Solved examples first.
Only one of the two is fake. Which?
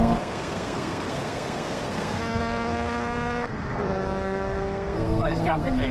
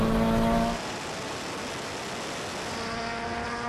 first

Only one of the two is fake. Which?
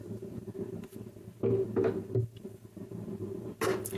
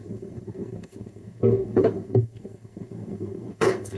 second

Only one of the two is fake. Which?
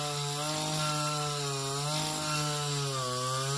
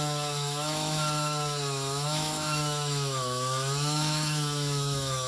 second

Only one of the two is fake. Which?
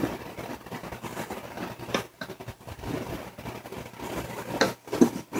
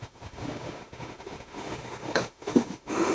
second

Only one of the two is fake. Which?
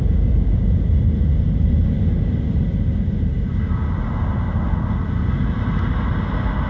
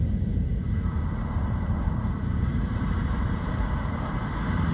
second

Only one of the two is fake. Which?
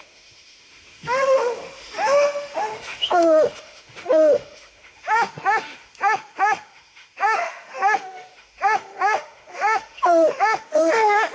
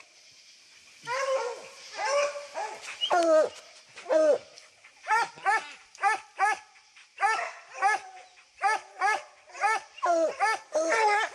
first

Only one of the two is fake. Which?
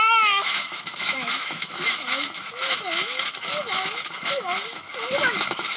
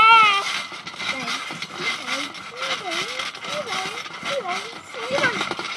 first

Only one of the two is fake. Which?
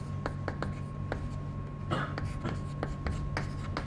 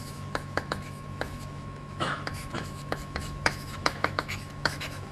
second